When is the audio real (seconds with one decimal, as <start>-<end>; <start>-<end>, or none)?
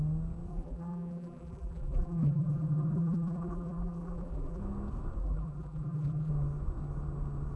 0.0-0.5; 4.6-5.2; 6.3-7.6